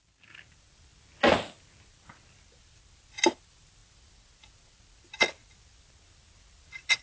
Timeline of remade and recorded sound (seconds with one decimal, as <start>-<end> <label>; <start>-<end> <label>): 0.0-7.0 recorded